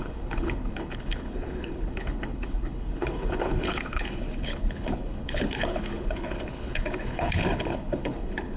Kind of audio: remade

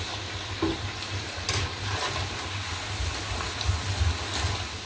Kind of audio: recorded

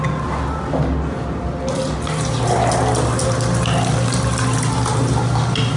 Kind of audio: recorded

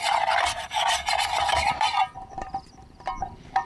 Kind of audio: remade